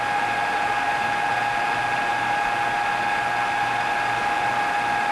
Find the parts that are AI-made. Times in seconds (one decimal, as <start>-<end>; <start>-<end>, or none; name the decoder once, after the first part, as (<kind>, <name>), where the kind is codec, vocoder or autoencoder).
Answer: 2.1-5.1 (vocoder, BigVGAN v2)